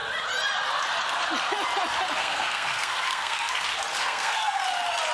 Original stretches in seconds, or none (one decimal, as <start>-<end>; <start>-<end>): 0.0-2.2; 3.5-3.9; 4.6-5.1